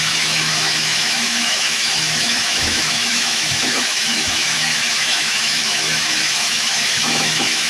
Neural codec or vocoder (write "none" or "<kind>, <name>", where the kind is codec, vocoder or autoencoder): autoencoder, DAC-VAE